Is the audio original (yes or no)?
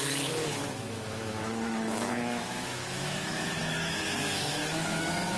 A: no